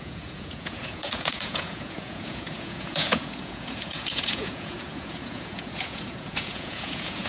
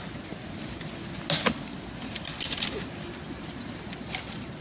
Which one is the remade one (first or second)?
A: first